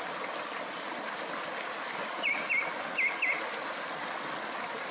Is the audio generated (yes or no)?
no